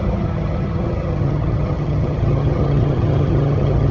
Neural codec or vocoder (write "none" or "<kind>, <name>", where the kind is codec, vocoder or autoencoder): vocoder, HiFi-GAN